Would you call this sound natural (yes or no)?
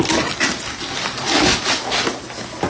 yes